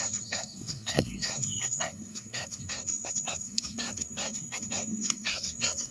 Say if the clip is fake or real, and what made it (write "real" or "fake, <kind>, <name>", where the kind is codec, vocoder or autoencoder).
fake, codec, SNAC